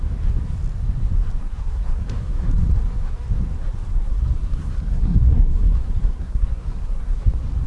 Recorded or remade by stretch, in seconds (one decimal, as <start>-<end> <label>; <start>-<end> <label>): 0.0-1.4 recorded; 1.4-2.5 remade; 2.5-3.9 recorded; 3.9-7.3 remade; 7.3-7.7 recorded